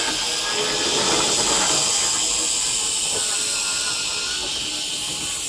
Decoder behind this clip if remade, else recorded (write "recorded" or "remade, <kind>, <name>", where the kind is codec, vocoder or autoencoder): recorded